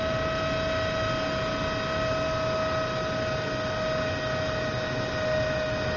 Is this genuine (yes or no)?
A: yes